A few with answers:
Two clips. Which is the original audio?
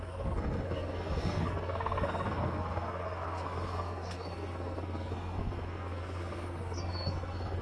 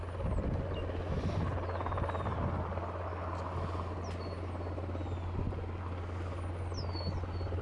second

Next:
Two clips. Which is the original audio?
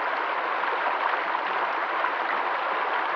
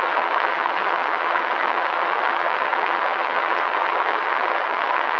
first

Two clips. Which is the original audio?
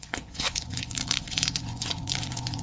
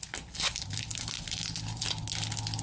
second